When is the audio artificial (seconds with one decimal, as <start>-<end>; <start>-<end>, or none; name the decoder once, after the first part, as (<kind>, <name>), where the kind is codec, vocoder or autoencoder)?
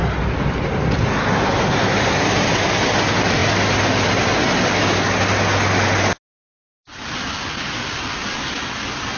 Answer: none